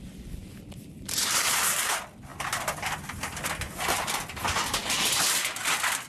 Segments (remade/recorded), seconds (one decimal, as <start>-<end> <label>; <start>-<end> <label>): 0.0-6.1 recorded